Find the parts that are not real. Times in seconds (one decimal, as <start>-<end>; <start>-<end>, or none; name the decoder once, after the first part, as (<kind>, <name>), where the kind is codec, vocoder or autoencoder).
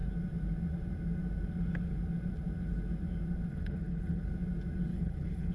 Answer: 3.5-4.2 (codec, HILCodec); 4.9-5.5